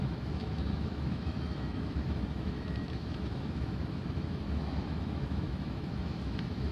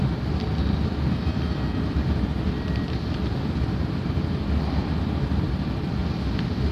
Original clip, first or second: second